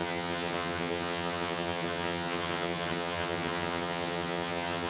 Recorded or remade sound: remade